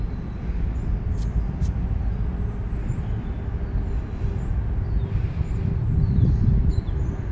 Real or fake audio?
real